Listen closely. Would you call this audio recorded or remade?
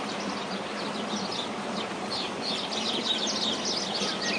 recorded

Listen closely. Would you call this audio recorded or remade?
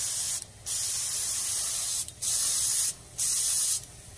recorded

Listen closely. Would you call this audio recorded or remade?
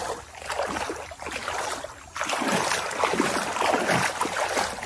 recorded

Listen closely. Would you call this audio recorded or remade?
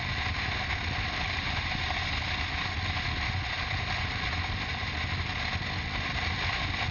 recorded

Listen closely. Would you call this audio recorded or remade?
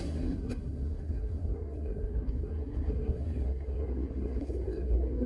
remade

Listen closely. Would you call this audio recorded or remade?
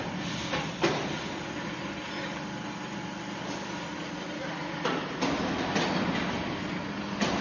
recorded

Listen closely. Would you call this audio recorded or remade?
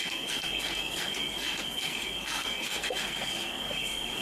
remade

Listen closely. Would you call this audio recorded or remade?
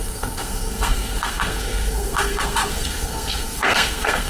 remade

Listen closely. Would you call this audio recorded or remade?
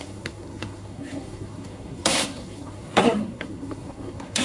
remade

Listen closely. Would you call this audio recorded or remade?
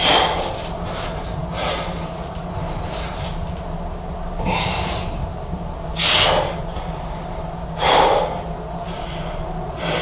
recorded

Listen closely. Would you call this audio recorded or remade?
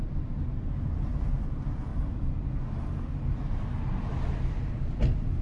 recorded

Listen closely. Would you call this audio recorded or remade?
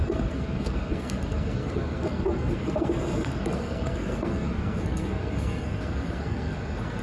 remade